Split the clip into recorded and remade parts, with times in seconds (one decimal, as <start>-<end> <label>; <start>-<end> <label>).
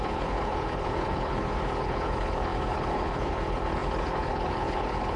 0.0-5.2 remade